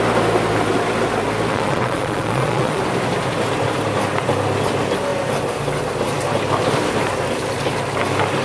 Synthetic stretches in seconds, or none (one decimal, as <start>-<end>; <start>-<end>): 1.5-2.8